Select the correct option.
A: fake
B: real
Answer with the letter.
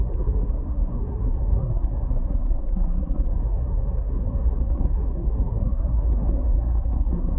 A